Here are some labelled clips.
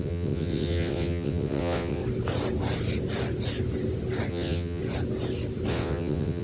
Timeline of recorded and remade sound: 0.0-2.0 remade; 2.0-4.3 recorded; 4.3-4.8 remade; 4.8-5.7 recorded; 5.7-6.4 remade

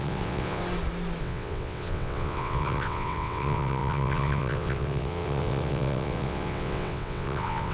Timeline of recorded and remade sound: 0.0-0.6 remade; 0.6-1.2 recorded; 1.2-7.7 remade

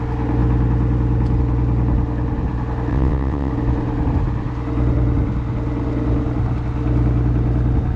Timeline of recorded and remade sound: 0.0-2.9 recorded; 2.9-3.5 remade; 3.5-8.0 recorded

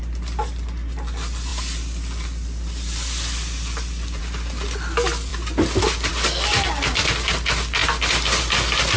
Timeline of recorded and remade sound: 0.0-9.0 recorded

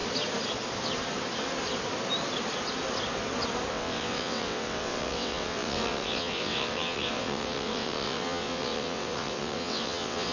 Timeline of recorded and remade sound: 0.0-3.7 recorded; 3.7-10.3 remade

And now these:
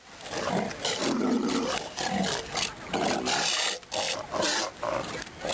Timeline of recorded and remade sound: 0.0-5.5 recorded